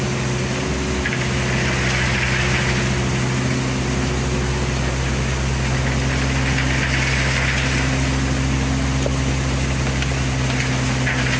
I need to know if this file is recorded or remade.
recorded